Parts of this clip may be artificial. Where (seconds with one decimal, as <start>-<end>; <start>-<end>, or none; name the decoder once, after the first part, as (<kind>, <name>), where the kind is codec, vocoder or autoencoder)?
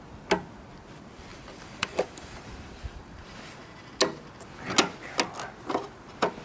1.3-3.8 (vocoder, BigVGAN v2)